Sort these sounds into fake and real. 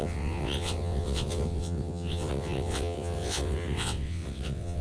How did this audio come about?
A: fake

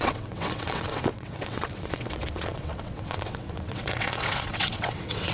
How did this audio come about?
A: fake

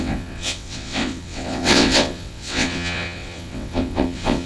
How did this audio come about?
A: fake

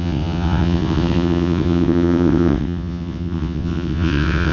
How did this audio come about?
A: fake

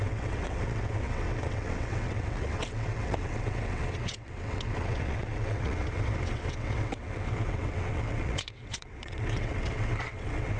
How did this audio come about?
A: fake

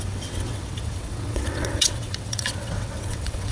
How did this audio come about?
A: fake